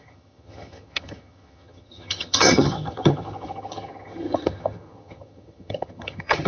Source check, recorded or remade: remade